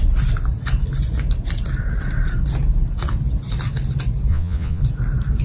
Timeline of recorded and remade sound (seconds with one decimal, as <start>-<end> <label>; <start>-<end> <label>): 0.0-4.3 recorded; 4.3-4.8 remade; 4.8-5.4 recorded